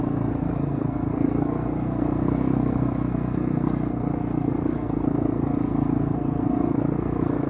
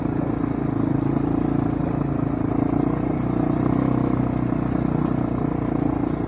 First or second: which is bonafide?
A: second